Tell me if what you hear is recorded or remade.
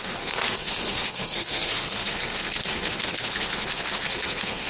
remade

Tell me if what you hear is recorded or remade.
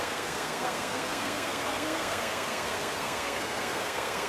remade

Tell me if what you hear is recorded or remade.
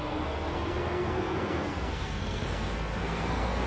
remade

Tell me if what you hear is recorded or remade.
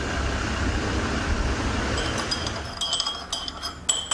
recorded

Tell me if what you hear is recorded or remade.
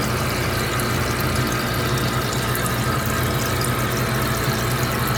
recorded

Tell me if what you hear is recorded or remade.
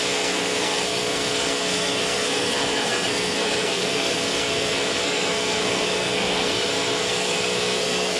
remade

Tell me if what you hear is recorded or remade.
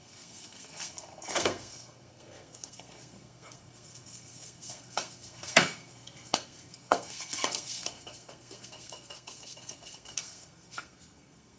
remade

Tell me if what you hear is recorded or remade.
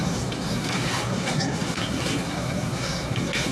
remade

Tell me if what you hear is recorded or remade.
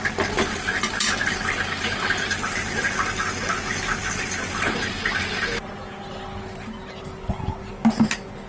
recorded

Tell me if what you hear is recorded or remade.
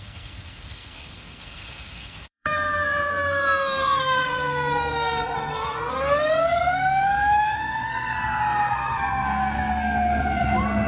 remade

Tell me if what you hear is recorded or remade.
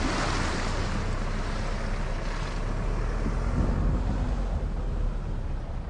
recorded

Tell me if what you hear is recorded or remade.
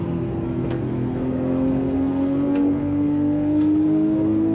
remade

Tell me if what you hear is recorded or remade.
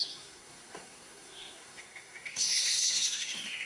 remade